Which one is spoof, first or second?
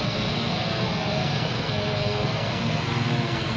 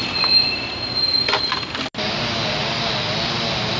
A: first